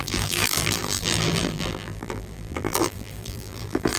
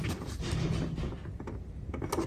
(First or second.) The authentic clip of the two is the second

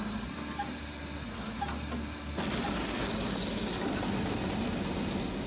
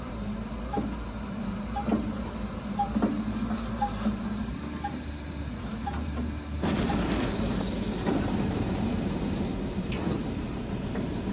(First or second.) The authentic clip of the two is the first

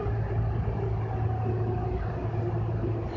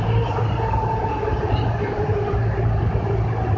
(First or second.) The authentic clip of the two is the first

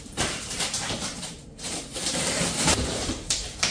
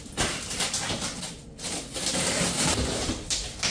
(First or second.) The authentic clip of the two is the second